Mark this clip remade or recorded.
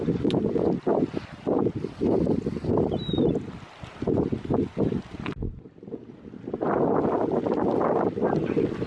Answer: recorded